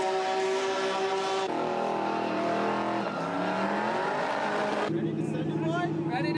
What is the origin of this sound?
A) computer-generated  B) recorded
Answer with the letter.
B